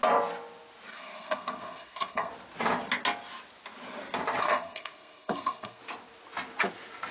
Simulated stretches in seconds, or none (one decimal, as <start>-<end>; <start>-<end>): 0.9-2.3; 4.4-5.8